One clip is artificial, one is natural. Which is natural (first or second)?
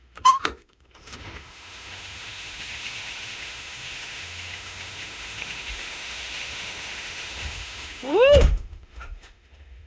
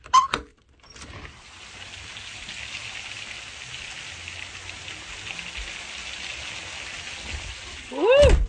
second